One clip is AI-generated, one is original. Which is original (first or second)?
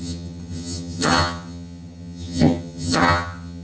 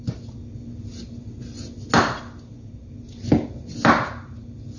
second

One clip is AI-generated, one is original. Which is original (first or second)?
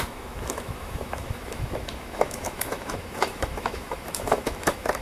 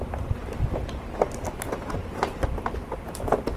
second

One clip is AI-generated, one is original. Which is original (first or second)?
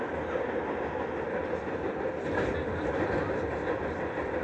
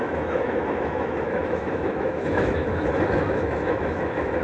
first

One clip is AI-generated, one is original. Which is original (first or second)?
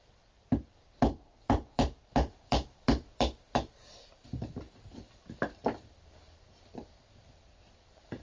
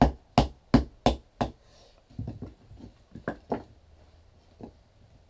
second